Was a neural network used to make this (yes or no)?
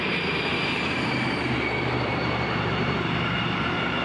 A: yes